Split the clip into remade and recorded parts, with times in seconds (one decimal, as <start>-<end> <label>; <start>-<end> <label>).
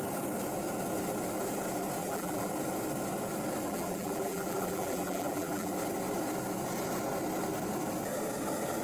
0.0-2.0 recorded; 2.0-2.5 remade; 2.5-3.6 recorded; 3.6-5.7 remade; 5.7-8.8 recorded